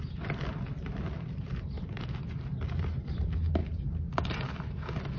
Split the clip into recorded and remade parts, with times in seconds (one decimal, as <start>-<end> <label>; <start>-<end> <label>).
0.0-0.8 recorded; 0.8-3.1 remade; 3.1-3.6 recorded; 3.6-4.8 remade; 4.8-5.2 recorded